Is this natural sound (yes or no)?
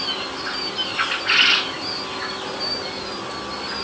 yes